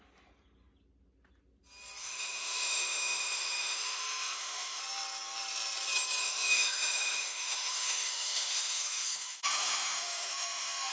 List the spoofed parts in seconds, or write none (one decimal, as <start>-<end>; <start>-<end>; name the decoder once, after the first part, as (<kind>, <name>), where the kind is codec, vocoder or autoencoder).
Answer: 2.0-4.8 (autoencoder, DAC-VAE); 6.2-10.9